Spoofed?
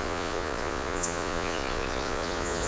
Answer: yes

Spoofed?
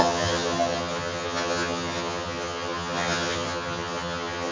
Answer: yes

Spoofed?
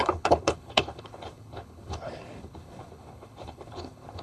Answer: yes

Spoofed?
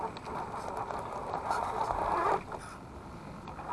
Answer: no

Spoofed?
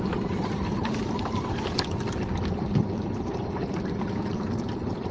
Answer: no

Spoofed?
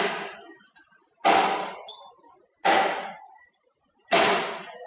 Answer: no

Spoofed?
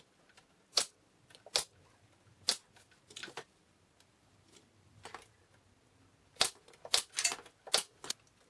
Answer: no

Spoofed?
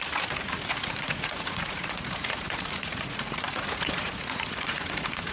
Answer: yes